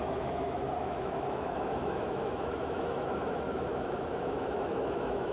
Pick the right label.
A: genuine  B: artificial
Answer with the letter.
B